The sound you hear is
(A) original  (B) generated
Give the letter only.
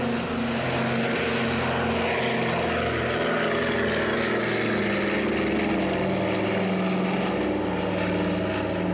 A